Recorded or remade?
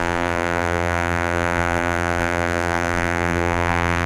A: remade